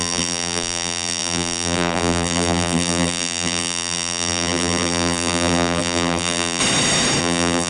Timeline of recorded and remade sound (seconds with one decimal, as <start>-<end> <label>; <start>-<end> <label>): 0.0-6.6 remade; 6.6-7.2 recorded; 7.2-7.7 remade